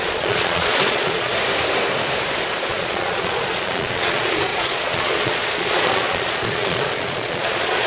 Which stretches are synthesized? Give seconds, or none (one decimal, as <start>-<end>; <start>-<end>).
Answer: 0.0-1.3; 2.6-7.9

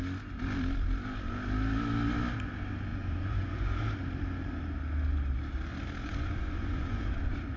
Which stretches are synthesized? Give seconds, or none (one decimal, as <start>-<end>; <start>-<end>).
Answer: 2.9-3.8; 6.0-7.0

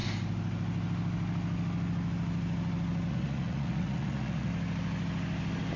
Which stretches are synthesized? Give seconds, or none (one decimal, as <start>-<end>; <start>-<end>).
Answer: 3.1-4.5

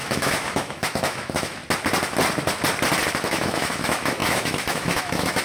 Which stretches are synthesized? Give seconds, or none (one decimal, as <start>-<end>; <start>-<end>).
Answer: 0.0-1.6; 3.2-5.4

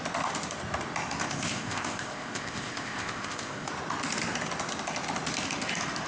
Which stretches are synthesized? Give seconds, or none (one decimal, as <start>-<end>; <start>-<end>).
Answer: 1.2-3.7